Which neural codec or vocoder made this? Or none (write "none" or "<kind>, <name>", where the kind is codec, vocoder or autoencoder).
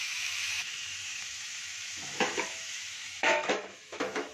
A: autoencoder, DAC-VAE